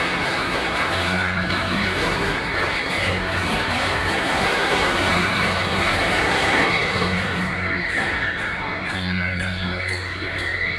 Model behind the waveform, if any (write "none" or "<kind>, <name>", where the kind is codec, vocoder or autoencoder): codec, SNAC